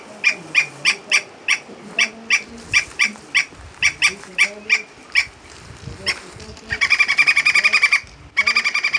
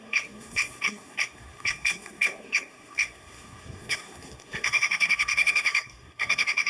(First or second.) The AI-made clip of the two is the second